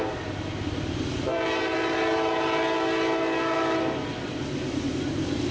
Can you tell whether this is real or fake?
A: real